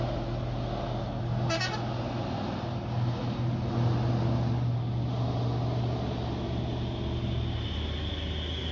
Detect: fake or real real